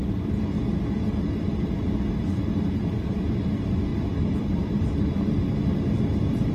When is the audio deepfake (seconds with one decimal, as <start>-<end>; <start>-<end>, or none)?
3.9-5.1